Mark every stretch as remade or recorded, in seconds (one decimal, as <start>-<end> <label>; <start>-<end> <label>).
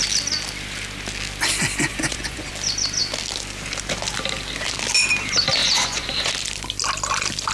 0.0-1.9 recorded; 1.9-2.5 remade; 2.5-5.6 recorded; 5.6-6.3 remade; 6.3-7.5 recorded